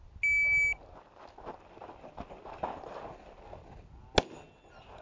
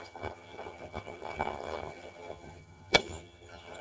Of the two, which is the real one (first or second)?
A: first